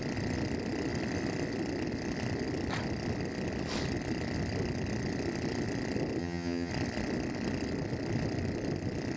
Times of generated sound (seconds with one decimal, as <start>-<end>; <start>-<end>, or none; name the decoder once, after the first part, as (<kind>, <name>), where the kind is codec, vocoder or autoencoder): 6.2-6.7 (vocoder, HiFi-GAN)